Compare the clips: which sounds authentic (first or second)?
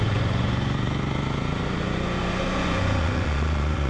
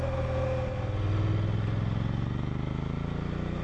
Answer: second